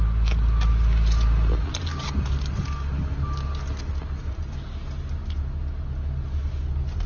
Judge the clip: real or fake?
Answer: real